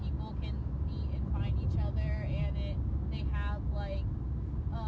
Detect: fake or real real